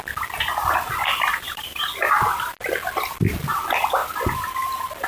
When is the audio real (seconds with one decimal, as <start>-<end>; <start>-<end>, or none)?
0.0-1.0; 1.8-5.1